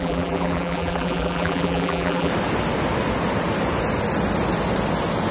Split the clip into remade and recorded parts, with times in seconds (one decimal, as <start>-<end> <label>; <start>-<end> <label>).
0.0-2.3 remade; 2.3-5.3 recorded